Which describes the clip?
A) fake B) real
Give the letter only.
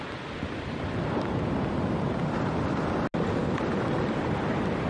B